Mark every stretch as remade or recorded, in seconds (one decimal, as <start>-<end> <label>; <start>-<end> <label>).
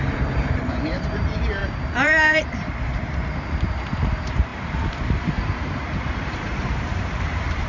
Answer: 0.0-7.7 remade